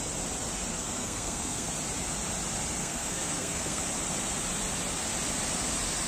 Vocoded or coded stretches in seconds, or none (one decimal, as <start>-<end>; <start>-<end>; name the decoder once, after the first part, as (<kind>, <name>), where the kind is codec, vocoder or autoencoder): 0.7-1.7 (codec, SNAC); 2.8-3.8